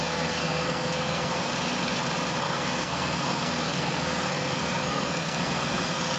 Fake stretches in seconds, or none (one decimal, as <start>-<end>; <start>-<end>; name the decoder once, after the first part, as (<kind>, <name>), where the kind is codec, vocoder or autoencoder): 0.0-1.5 (codec, SNAC); 2.4-6.2